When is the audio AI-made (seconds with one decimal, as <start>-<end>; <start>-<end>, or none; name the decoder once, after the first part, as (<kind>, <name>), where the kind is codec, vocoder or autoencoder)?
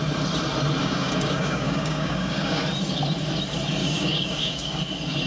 0.8-2.6 (codec, DAC); 3.8-4.8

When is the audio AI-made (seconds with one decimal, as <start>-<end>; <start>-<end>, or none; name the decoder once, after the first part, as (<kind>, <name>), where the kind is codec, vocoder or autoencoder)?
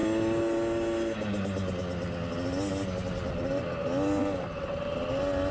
none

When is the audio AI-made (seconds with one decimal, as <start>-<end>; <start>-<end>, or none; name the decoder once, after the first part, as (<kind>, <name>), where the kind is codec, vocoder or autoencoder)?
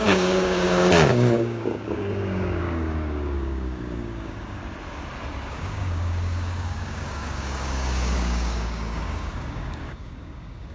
0.0-4.6 (codec, DAC); 5.5-10.7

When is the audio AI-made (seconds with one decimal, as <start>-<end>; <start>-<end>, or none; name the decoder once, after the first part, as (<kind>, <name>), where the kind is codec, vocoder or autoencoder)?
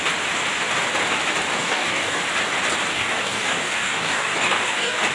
1.5-2.2 (codec, DAC); 2.9-5.1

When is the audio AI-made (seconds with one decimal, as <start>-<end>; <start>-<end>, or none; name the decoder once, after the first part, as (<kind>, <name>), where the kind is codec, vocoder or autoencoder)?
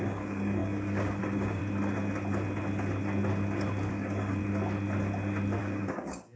0.0-1.6 (codec, DAC); 3.9-4.4; 5.6-6.4